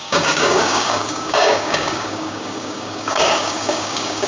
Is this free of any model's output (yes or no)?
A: no